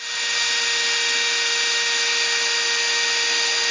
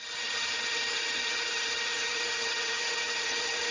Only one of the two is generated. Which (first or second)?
second